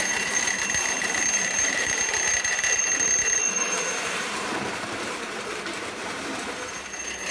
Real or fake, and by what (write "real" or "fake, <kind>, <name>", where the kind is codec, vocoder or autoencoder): fake, vocoder, BigVGAN v2